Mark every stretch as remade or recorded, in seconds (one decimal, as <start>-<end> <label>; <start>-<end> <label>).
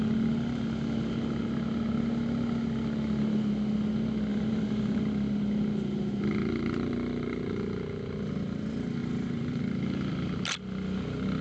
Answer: 0.0-4.3 recorded; 4.3-5.0 remade; 5.0-9.0 recorded; 9.0-9.6 remade; 9.6-11.4 recorded